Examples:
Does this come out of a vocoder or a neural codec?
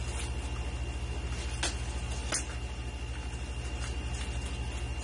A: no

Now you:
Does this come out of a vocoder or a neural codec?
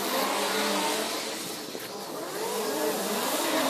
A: no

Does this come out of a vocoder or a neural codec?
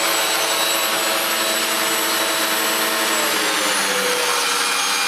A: no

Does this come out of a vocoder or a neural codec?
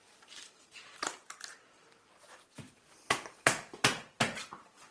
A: yes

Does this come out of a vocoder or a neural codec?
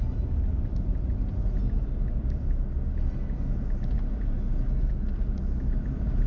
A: no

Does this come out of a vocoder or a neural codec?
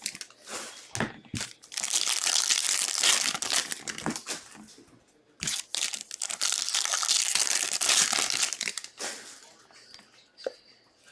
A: no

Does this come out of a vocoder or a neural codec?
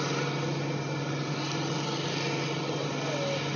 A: no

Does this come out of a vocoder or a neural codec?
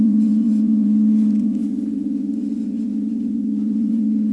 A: yes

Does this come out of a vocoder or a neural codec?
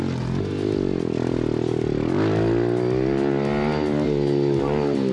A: no